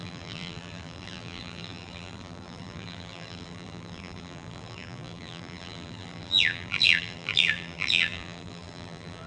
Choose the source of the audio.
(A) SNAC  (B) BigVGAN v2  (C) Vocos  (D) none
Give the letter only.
B